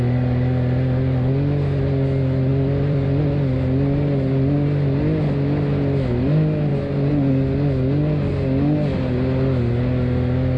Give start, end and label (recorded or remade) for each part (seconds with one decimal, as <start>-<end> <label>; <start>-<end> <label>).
0.0-2.5 recorded; 2.5-3.2 remade; 3.2-10.6 recorded